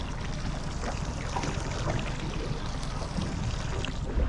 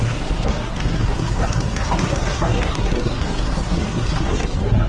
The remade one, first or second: second